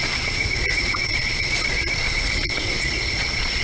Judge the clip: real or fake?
fake